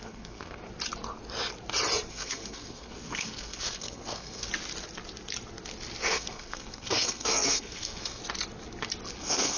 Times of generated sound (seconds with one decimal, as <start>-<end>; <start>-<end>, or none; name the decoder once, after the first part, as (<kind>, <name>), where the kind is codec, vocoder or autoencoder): 0.0-0.6 (codec, SNAC); 2.1-4.5; 6.0-8.2; 9.2-9.6